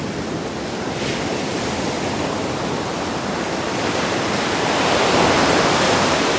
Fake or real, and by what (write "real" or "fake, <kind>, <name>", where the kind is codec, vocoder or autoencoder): real